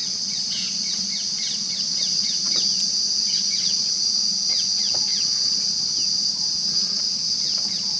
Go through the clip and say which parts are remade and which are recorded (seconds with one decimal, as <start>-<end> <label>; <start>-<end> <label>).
0.0-8.0 remade